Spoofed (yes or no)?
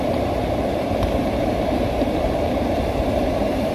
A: yes